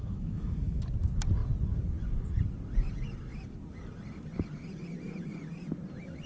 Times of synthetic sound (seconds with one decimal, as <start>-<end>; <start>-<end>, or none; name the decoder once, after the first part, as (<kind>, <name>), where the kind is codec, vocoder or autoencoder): 0.0-0.8 (autoencoder, DAC-VAE)